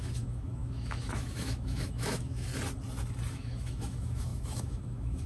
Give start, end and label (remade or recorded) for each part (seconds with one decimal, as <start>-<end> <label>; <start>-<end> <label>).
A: 0.0-2.5 remade; 2.5-3.3 recorded; 3.3-5.3 remade

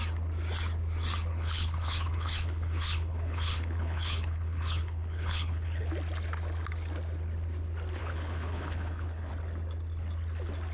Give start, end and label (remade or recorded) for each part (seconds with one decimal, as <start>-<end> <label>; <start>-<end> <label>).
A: 0.0-1.3 recorded; 1.3-5.9 remade; 5.9-8.0 recorded; 8.0-9.3 remade; 9.3-10.7 recorded

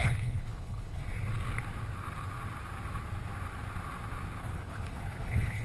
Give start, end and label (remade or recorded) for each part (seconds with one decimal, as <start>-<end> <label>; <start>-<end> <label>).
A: 0.0-1.0 remade; 1.0-4.4 recorded; 4.4-5.6 remade

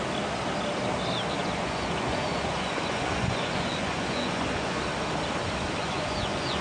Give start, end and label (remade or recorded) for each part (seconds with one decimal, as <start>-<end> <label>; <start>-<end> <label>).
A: 0.0-1.4 recorded; 1.4-4.8 remade; 4.8-5.8 recorded; 5.8-6.6 remade

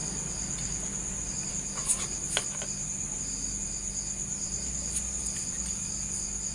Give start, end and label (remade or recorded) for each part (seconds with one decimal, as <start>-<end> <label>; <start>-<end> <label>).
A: 0.0-6.5 recorded

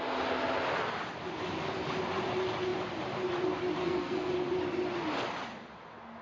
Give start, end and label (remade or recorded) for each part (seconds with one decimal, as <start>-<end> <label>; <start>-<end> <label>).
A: 0.0-3.8 recorded; 3.8-4.3 remade; 4.3-6.2 recorded

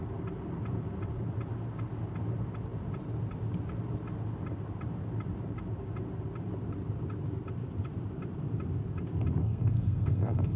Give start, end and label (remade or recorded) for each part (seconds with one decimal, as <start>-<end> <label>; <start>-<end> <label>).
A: 0.0-9.4 recorded; 9.4-10.6 remade

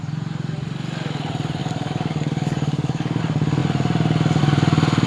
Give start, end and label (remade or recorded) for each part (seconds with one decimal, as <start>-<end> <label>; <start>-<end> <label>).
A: 0.0-1.6 recorded; 1.6-3.2 remade; 3.2-5.1 recorded